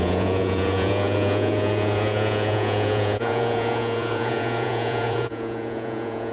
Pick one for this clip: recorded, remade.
remade